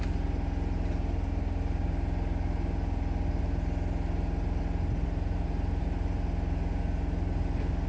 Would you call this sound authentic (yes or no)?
yes